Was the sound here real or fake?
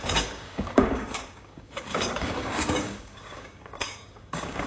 fake